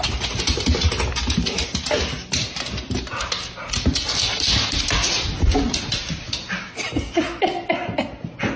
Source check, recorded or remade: recorded